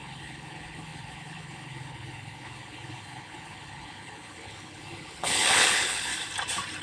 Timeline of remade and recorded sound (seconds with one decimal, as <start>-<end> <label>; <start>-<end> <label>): 0.0-6.1 remade; 6.1-6.8 recorded